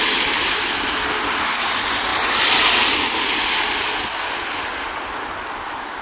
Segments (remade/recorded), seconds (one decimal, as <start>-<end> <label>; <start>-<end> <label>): 0.0-6.0 recorded